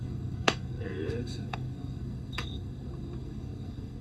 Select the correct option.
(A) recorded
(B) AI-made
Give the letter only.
B